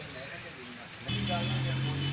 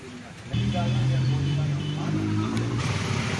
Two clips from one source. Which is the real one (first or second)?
first